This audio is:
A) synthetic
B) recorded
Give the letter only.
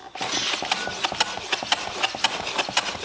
B